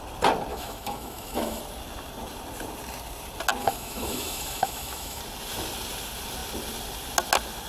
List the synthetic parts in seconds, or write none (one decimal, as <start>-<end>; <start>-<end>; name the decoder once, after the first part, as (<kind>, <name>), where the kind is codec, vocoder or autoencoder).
0.5-1.6 (autoencoder, DAC-VAE); 3.6-5.2